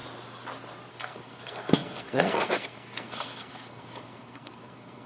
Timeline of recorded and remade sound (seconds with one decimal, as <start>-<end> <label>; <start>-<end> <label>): 0.0-0.9 recorded; 0.9-5.1 remade